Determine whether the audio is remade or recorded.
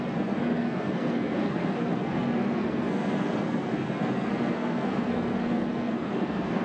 remade